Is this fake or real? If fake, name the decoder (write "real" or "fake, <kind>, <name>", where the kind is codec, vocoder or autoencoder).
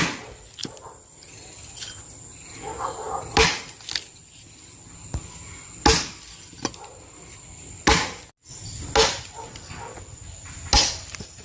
real